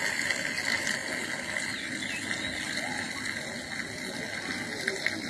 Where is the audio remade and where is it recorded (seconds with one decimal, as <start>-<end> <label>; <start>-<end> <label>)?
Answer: 0.0-5.3 recorded